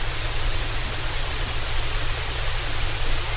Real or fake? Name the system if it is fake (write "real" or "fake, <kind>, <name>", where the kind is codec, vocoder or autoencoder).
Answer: fake, vocoder, Vocos